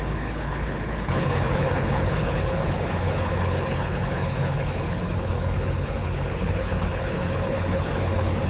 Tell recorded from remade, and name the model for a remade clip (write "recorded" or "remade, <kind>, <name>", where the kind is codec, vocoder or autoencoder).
remade, codec, HILCodec